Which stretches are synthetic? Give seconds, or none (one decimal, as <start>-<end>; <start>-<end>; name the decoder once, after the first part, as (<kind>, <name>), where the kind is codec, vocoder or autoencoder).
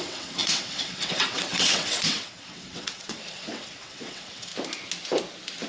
0.0-4.5 (vocoder, WaveNeXt)